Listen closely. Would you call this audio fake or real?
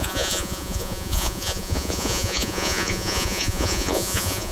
fake